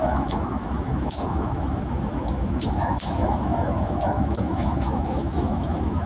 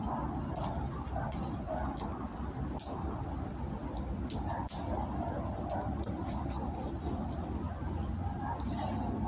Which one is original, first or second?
second